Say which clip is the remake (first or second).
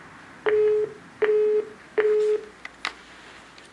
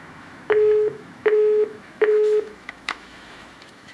second